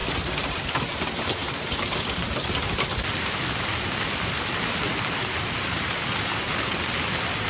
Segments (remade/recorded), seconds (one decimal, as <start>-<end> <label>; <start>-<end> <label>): 0.0-0.9 remade; 0.9-1.4 recorded; 1.4-4.6 remade; 4.6-5.2 recorded; 5.2-6.7 remade; 6.7-7.5 recorded